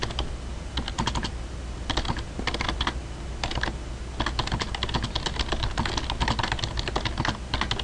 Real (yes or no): yes